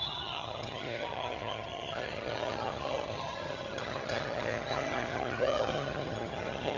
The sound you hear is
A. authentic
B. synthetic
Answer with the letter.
B